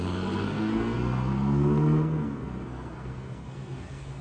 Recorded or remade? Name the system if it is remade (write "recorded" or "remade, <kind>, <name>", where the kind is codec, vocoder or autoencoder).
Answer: remade, codec, SNAC